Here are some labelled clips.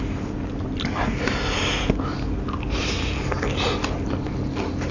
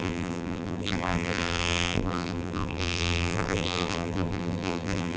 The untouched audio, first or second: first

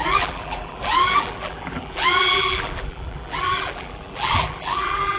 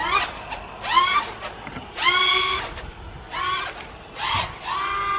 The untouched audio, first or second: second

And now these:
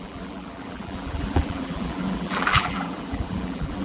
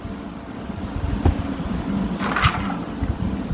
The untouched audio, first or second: second